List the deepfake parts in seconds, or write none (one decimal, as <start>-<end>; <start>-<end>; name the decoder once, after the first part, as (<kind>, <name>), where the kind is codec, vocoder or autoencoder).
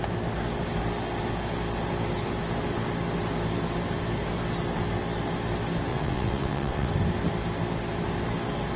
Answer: 5.9-6.9 (vocoder, WaveNeXt)